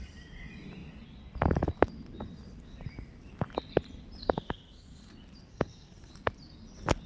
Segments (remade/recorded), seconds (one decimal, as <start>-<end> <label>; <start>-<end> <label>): 0.0-4.2 recorded; 4.2-5.1 remade; 5.1-5.5 recorded; 5.5-6.1 remade; 6.1-7.1 recorded